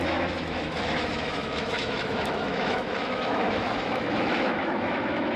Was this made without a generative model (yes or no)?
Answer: no